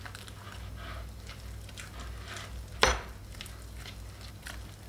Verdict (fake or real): real